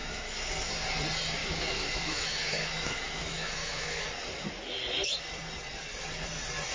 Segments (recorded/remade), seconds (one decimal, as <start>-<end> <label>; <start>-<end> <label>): 0.0-0.7 remade; 0.7-1.4 recorded; 1.4-4.0 remade; 4.0-6.7 recorded